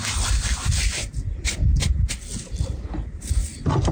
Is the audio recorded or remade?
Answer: recorded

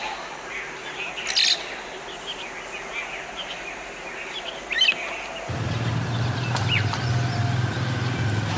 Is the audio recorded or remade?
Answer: recorded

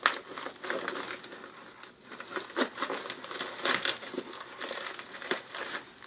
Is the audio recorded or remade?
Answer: recorded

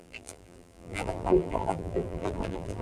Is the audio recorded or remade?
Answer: remade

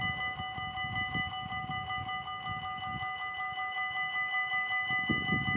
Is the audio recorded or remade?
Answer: recorded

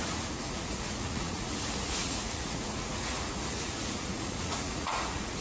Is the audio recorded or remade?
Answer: remade